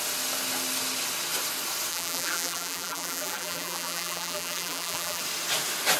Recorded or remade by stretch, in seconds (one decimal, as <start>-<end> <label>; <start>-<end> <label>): 0.0-1.9 recorded; 1.9-5.2 remade; 5.2-6.0 recorded